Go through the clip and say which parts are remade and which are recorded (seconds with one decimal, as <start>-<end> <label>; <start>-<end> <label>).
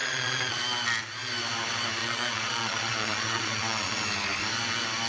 0.0-0.6 remade; 0.6-2.0 recorded; 2.0-4.0 remade; 4.0-5.1 recorded